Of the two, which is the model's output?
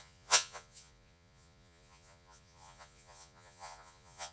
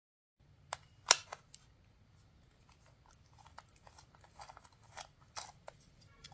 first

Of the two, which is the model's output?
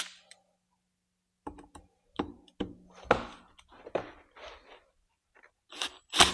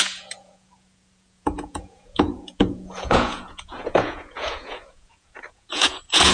second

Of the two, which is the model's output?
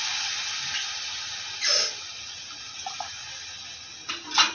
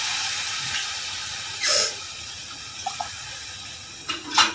second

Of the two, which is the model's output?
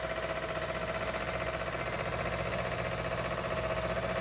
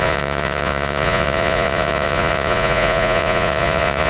second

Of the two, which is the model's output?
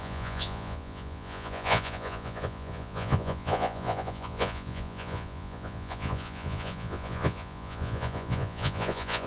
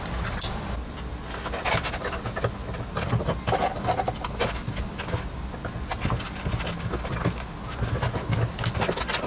first